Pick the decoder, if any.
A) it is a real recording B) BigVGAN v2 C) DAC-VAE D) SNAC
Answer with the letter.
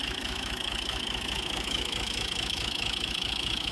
C